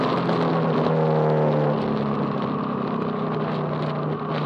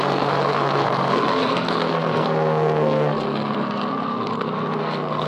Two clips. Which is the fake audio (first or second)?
second